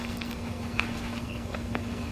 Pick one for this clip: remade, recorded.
remade